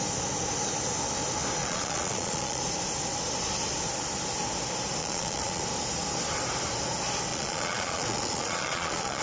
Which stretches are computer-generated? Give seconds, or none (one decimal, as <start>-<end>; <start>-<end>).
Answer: 1.6-2.6; 5.0-5.6; 7.3-9.2